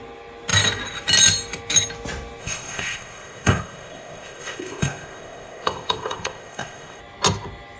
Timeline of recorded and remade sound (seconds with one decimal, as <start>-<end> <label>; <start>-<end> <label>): 0.0-2.4 recorded; 2.4-7.0 remade; 7.0-7.8 recorded